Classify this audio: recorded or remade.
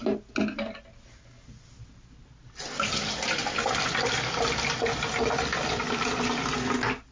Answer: recorded